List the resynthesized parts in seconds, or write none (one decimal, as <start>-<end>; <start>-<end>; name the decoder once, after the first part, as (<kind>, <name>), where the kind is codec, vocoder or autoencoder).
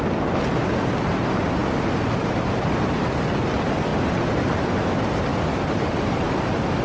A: none